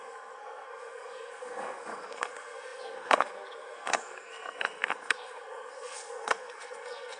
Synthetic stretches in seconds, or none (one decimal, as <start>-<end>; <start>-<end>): 0.0-7.2